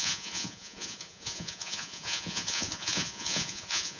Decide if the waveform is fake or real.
fake